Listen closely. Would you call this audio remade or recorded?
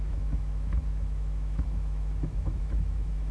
remade